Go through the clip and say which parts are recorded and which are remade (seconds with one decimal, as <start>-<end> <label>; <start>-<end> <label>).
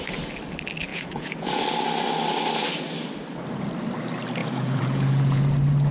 0.0-0.9 recorded; 0.9-1.6 remade; 1.6-4.4 recorded; 4.4-5.5 remade; 5.5-5.9 recorded